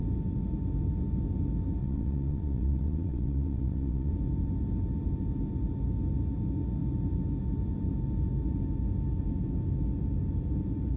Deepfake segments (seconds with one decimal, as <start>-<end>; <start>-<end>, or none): 1.8-4.1